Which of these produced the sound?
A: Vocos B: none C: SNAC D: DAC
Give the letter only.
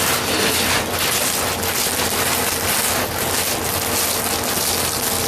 B